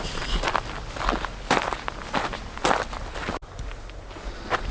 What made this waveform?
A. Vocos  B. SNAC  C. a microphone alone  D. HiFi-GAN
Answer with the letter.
C